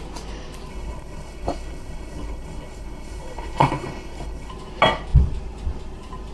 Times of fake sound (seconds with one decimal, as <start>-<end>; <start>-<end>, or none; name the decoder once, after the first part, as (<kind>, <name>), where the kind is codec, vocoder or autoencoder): 0.7-4.5 (codec, HILCodec)